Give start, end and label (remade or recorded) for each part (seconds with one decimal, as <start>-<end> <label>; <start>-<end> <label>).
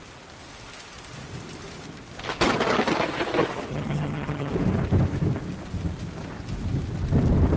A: 0.0-3.7 recorded; 3.7-4.5 remade; 4.5-7.6 recorded